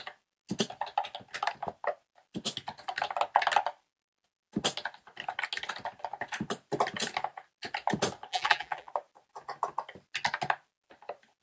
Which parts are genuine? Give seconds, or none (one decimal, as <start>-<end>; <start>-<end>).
0.0-8.3; 8.9-11.4